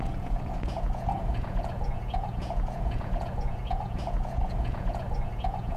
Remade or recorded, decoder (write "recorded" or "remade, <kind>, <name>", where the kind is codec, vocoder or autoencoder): remade, vocoder, Vocos